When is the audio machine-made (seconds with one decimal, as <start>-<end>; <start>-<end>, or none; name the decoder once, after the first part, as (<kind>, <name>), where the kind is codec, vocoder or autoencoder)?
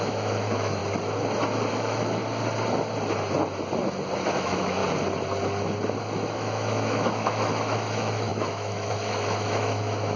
0.0-0.8 (autoencoder, DAC-VAE); 1.7-2.2; 4.3-4.8; 6.0-10.2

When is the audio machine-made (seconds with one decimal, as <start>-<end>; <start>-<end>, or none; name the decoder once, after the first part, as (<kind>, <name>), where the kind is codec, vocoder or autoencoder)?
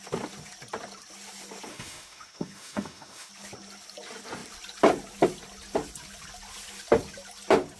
1.7-3.3 (autoencoder, DAC-VAE)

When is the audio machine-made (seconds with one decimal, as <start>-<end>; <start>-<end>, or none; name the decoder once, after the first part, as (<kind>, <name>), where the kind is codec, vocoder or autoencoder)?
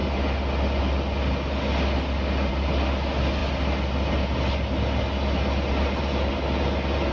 none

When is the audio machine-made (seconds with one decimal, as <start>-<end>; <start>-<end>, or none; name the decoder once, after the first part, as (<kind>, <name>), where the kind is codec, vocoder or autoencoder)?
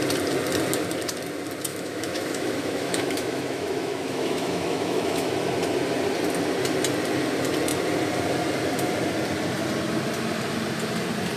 1.7-5.3 (autoencoder, DAC-VAE)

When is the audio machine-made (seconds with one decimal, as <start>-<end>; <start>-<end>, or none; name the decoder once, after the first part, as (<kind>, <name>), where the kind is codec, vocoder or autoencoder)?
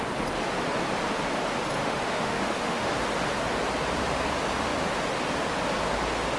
1.8-2.9 (autoencoder, DAC-VAE)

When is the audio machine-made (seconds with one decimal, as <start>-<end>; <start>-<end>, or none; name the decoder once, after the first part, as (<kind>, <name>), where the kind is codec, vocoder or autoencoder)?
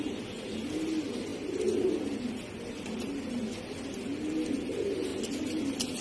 none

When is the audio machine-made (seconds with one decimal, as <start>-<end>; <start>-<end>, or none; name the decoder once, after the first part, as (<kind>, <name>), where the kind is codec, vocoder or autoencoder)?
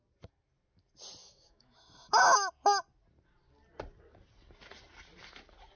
1.2-2.5 (autoencoder, DAC-VAE)